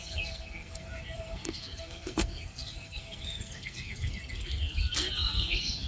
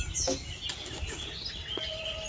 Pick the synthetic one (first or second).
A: first